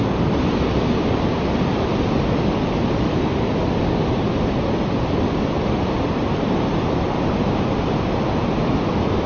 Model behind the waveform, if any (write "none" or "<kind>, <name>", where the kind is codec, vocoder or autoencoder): none